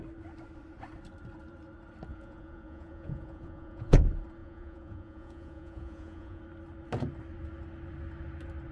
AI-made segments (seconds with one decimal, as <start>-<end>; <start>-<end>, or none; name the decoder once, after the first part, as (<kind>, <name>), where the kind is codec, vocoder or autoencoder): 2.1-4.0 (vocoder, Vocos); 4.4-6.4

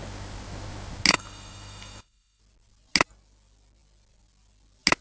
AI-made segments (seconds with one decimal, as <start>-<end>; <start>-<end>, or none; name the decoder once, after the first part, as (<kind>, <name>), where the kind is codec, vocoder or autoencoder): 1.1-2.4 (autoencoder, DAC-VAE)

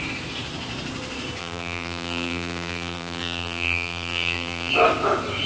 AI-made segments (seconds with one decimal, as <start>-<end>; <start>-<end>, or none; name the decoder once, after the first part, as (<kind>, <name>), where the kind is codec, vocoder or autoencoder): 1.4-4.7 (vocoder, BigVGAN v2)

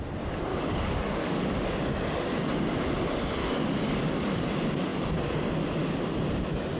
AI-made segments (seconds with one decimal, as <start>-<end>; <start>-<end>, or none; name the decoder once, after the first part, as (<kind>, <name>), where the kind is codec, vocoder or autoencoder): 0.5-1.5 (codec, DAC); 3.4-4.4

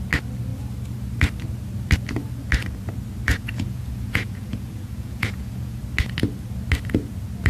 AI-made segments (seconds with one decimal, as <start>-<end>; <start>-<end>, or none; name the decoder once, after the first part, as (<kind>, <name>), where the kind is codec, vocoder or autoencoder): 3.3-5.8 (vocoder, Vocos)

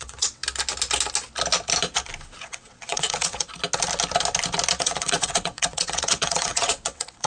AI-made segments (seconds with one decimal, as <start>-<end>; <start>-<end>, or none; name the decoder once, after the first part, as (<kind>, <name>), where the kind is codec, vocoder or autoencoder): 0.0-0.4 (vocoder, WaveNeXt); 2.4-3.5; 4.8-7.3